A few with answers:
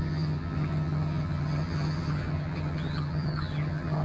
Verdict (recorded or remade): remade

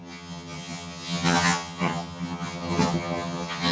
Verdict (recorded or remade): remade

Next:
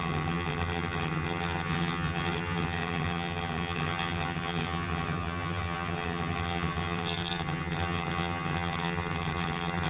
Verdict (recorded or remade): remade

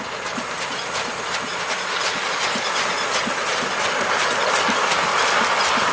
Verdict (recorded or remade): recorded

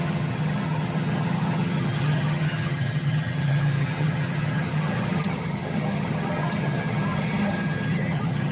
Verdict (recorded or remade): remade